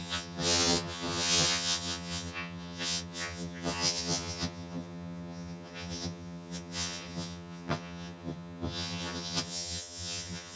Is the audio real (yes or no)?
no